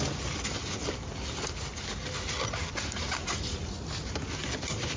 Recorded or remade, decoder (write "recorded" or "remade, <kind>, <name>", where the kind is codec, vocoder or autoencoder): recorded